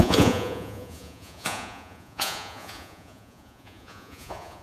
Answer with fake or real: fake